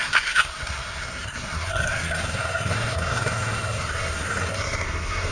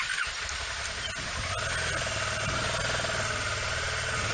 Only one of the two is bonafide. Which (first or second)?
second